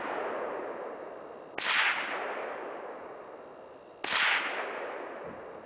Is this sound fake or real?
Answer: real